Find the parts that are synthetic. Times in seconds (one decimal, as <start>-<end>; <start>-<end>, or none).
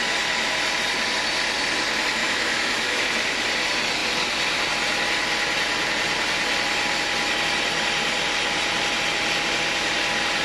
2.2-3.0